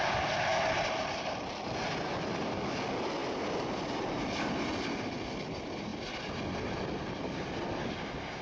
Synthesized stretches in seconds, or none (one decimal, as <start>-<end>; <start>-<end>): none